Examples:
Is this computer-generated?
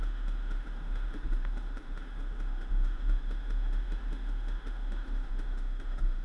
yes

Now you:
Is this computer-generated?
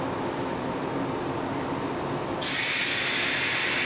no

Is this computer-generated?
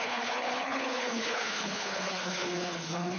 yes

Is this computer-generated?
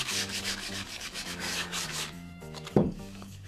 yes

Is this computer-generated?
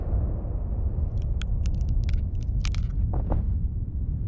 no